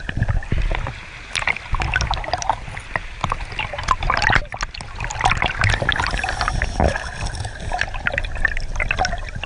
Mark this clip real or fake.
real